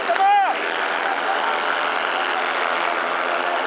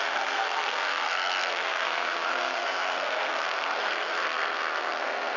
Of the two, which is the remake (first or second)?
second